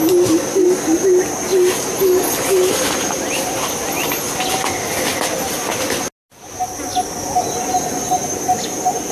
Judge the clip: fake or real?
real